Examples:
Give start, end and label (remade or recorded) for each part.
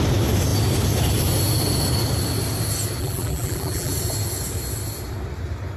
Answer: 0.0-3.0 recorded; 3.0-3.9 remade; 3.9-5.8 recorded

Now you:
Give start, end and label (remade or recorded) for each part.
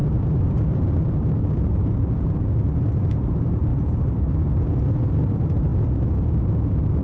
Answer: 0.0-5.7 remade; 5.7-6.3 recorded; 6.3-7.0 remade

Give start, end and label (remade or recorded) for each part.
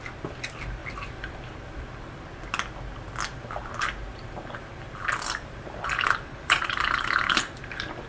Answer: 0.0-0.8 recorded; 0.8-2.2 remade; 2.2-4.1 recorded; 4.1-8.1 remade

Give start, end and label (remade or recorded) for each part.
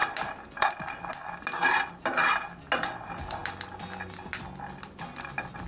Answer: 0.0-5.7 recorded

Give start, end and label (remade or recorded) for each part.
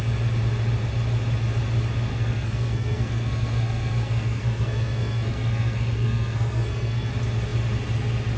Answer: 0.0-2.1 recorded; 2.1-7.1 remade; 7.1-8.4 recorded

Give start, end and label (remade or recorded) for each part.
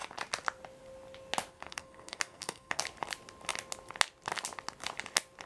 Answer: 0.0-1.5 recorded; 1.5-2.8 remade; 2.8-5.5 recorded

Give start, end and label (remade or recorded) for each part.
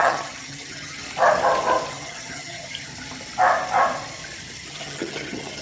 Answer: 0.0-1.0 remade; 1.0-1.9 recorded; 1.9-2.9 remade; 2.9-4.7 recorded; 4.7-5.6 remade